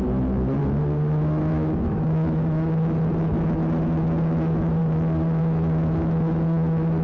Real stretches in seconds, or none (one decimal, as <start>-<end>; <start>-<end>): 0.6-1.5; 4.8-5.4

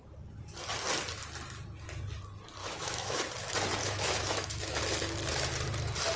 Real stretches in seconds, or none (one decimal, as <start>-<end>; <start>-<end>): 0.0-2.6; 3.2-3.8; 4.8-6.2

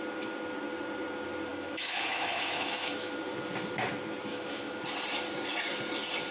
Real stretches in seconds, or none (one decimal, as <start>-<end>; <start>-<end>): 0.0-1.5; 3.1-4.3; 4.8-6.3

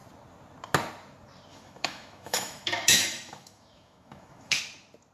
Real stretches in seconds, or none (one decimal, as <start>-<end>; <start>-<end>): 0.0-1.5; 4.6-5.1

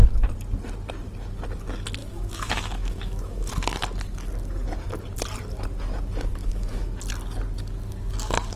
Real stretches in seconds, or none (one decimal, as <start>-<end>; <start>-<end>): 0.0-2.0; 3.5-6.4; 6.9-8.6

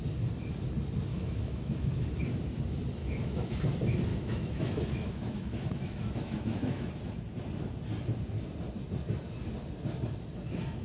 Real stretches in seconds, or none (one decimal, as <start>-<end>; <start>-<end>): 0.0-1.1; 1.9-3.0; 3.6-4.1; 6.9-10.8

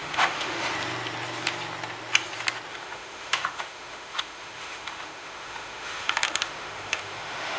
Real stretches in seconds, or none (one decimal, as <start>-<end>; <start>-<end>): 0.7-2.7

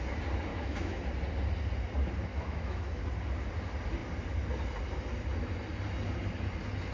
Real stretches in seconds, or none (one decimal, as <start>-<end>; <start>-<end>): 0.0-0.5; 1.0-2.3; 3.0-6.9